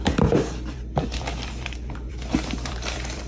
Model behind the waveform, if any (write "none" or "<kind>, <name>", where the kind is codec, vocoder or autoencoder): vocoder, BigVGAN v2